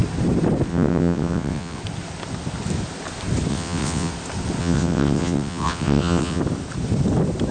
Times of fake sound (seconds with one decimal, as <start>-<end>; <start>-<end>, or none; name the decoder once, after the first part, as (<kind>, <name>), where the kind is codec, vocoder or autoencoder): 0.7-1.8 (vocoder, WaveNeXt); 3.5-4.1; 4.6-6.4